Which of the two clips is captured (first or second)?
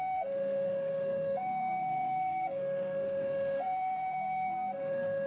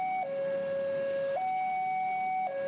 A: second